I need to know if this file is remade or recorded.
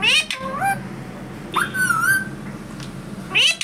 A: recorded